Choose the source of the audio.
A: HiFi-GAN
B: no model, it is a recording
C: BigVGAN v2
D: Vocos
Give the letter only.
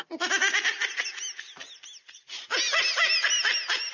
B